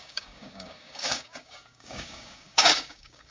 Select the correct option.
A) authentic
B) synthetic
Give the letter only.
B